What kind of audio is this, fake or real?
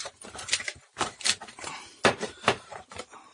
fake